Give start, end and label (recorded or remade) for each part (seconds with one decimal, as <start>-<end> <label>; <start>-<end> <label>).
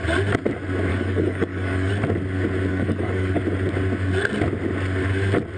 0.0-0.9 recorded; 0.9-1.9 remade; 1.9-2.7 recorded; 2.7-3.4 remade; 3.4-5.6 recorded